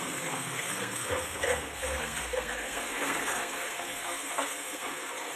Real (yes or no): no